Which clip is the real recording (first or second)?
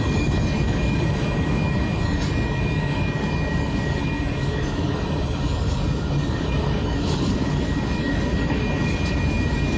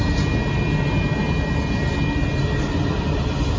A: second